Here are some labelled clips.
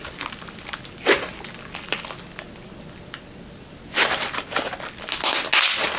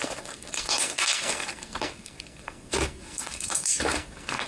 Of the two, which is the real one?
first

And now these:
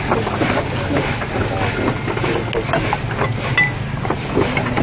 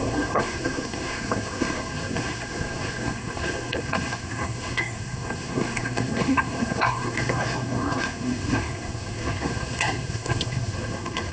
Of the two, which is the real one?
first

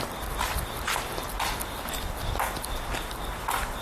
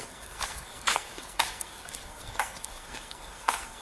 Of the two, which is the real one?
first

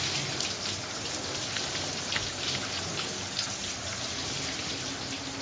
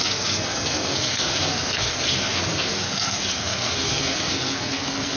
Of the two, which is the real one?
first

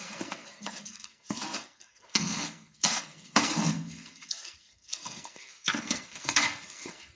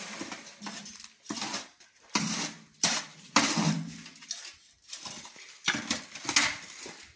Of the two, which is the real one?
second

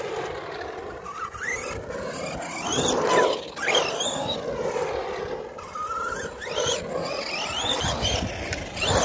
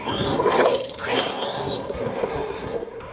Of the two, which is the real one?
first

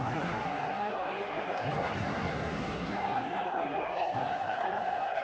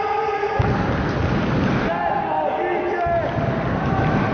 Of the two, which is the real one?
second